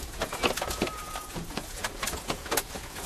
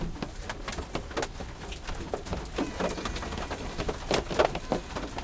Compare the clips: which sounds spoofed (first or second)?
first